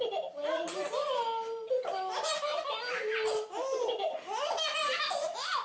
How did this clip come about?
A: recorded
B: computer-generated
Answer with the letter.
A